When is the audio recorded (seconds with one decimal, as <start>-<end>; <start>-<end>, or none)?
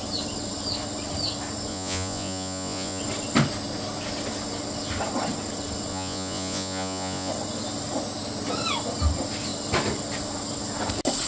0.0-1.7; 3.0-5.9; 7.3-11.3